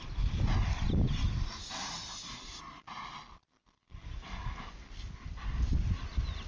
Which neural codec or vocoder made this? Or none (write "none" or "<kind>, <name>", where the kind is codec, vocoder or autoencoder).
none